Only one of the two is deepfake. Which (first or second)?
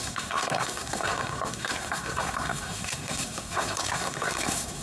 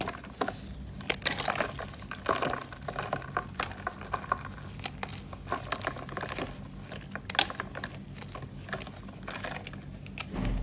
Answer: first